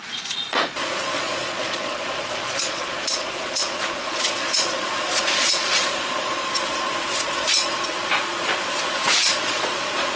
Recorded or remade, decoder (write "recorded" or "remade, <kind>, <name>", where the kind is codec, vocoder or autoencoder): remade, vocoder, Vocos